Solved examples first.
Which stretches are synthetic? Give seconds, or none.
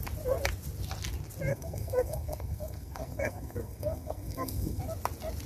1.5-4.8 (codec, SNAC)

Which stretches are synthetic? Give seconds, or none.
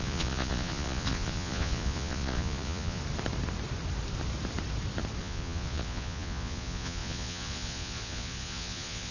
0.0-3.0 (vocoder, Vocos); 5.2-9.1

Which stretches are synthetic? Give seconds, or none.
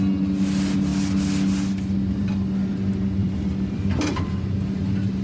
3.2-4.2 (vocoder, BigVGAN v2)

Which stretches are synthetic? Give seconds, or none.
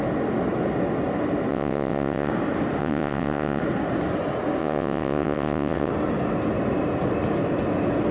1.5-2.3 (vocoder, WaveNeXt); 2.8-3.6; 4.6-5.9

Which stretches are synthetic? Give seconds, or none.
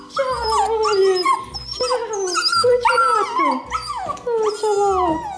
none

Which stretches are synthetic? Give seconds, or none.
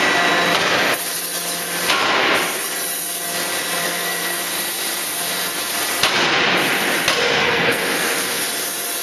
3.8-4.4 (codec, SNAC); 7.4-8.4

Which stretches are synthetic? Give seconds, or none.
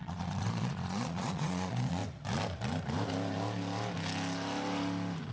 0.0-2.0 (vocoder, Vocos)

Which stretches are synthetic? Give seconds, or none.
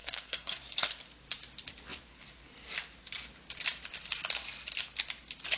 0.0-0.6 (codec, SNAC)